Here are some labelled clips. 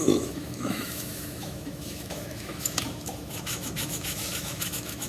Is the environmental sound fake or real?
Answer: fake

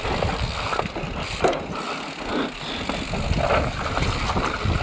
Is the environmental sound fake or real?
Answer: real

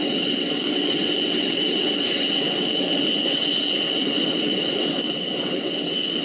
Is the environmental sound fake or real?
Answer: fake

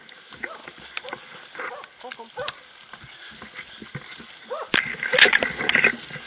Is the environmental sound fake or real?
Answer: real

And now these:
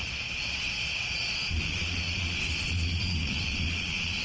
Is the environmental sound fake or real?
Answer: fake